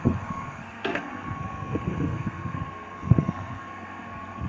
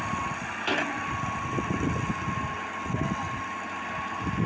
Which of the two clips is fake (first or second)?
first